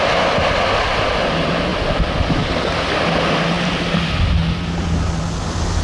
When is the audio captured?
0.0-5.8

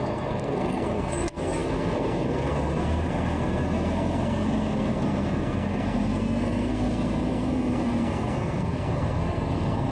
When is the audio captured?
none

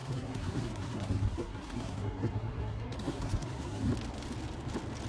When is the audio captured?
3.9-5.1

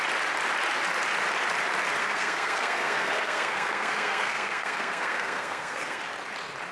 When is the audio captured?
0.0-2.0; 6.0-6.7

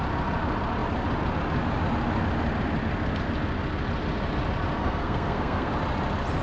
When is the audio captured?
0.0-4.8; 5.7-6.4

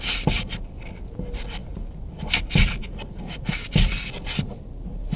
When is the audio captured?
0.0-5.2

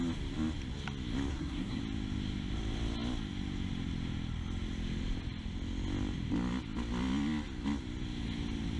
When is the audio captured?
0.0-1.3; 1.8-8.8

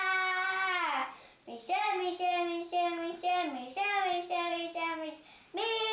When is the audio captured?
0.0-5.9